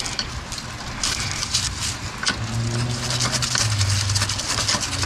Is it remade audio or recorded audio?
recorded